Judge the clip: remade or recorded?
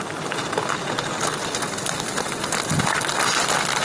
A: recorded